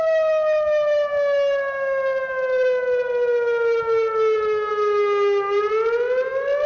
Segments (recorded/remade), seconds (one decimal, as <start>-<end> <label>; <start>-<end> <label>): 0.0-6.7 recorded